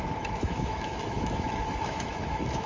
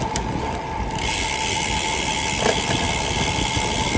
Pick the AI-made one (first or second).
first